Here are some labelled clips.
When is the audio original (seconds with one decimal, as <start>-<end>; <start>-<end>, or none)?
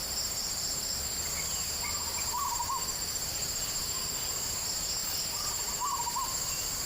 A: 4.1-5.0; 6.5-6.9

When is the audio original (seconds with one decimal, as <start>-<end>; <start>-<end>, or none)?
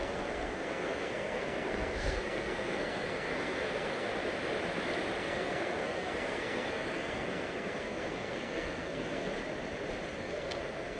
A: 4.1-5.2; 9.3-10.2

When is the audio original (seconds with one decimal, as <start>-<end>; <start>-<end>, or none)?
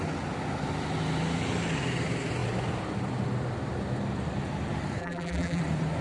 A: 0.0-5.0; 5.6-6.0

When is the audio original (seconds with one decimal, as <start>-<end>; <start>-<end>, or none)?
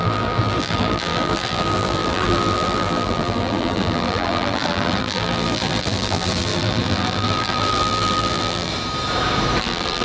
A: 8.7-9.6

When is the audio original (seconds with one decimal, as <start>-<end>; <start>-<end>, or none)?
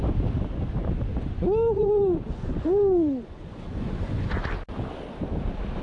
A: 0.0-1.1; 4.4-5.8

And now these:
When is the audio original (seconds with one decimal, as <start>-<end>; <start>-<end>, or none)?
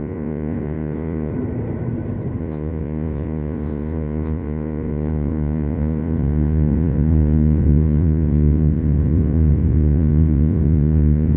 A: 1.3-2.4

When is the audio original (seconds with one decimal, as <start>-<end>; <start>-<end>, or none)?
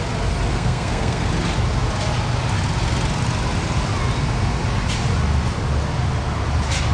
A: 0.0-0.5; 1.3-6.9